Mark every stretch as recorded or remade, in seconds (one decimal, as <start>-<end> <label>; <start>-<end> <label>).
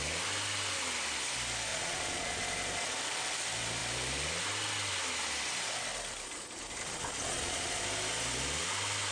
0.0-1.7 recorded; 1.7-2.4 remade; 2.4-7.3 recorded; 7.3-7.8 remade; 7.8-9.1 recorded